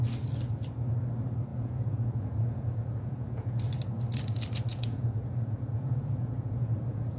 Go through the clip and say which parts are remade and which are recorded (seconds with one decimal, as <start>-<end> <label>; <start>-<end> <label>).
0.0-1.5 recorded; 1.5-3.6 remade; 3.6-4.7 recorded; 4.7-7.2 remade